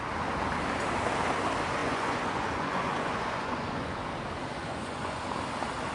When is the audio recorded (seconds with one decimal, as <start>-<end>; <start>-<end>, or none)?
0.0-1.8; 4.0-4.6; 5.2-5.9